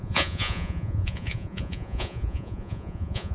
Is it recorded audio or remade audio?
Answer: remade